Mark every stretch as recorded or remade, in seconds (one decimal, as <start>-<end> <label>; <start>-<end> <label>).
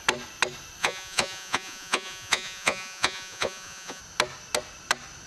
0.0-0.8 recorded; 0.8-4.0 remade; 4.0-5.3 recorded